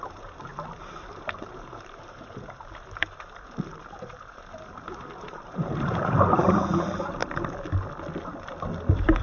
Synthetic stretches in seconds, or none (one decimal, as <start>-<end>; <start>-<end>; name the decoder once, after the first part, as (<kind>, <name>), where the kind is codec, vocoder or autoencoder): 0.0-0.5 (vocoder, BigVGAN v2); 1.1-7.2